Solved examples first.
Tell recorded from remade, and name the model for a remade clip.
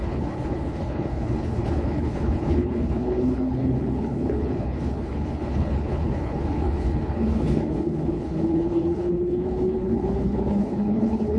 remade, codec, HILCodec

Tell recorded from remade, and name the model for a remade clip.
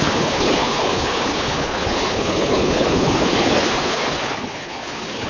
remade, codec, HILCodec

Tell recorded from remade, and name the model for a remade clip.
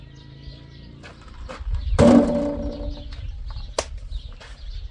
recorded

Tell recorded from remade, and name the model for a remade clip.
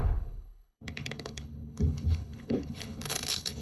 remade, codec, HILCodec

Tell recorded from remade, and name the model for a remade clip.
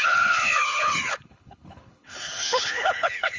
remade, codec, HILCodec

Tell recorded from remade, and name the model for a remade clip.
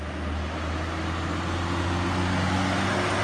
recorded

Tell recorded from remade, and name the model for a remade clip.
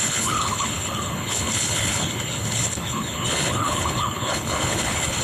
remade, codec, HILCodec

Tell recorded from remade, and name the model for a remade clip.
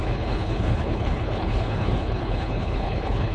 remade, codec, HILCodec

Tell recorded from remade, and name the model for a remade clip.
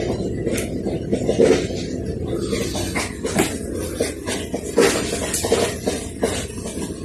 recorded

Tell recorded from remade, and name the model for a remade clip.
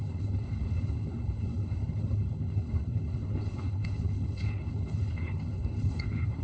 remade, codec, HILCodec